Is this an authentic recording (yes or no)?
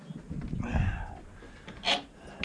yes